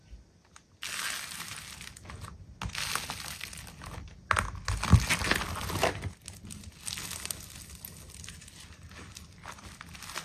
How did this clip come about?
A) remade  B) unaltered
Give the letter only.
B